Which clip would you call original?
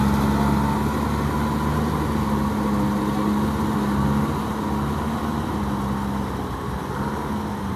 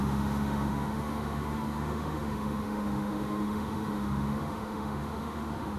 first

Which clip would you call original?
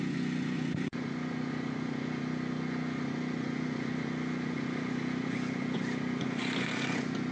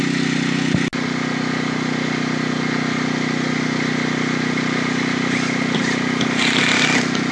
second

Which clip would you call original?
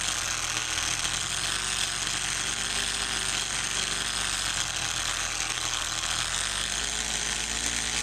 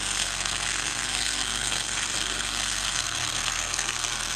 first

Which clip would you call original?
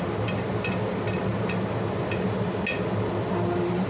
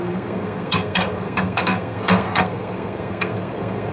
first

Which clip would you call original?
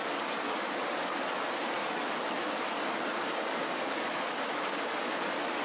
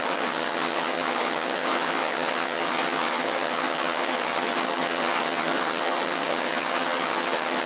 first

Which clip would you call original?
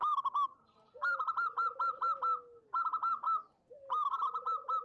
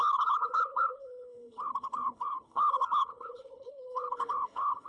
first